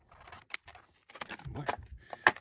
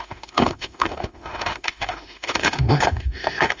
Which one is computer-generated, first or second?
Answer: second